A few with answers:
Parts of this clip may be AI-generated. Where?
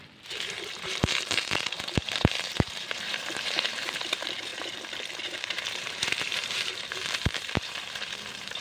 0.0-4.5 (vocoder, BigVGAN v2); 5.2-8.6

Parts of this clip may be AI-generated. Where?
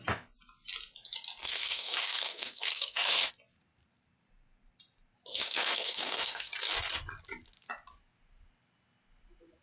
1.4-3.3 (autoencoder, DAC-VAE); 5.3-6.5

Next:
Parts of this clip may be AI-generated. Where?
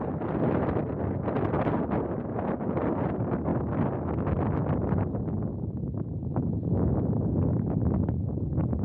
none